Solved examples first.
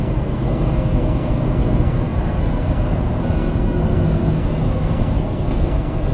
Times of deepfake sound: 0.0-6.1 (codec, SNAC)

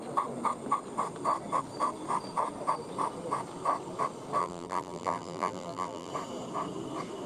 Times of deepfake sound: 4.4-6.1 (vocoder, BigVGAN v2)

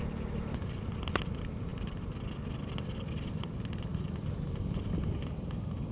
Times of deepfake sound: none

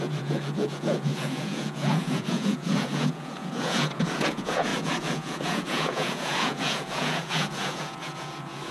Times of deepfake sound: 0.0-8.7 (vocoder, Vocos)

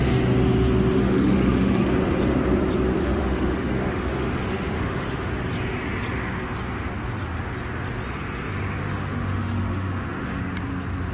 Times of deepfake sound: 1.0-1.9 (autoencoder, DAC-VAE); 3.0-5.3; 8.8-10.4

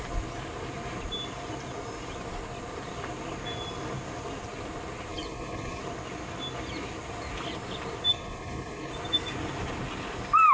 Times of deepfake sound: 5.1-5.8 (codec, HILCodec); 8.1-8.9

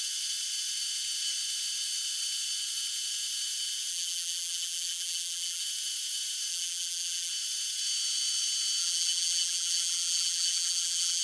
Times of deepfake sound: 3.9-5.6 (vocoder, BigVGAN v2); 6.5-7.3; 8.8-11.2